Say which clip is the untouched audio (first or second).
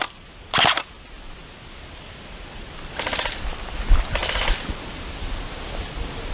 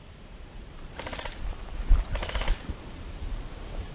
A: first